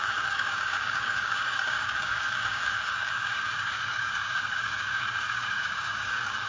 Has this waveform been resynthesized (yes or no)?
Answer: yes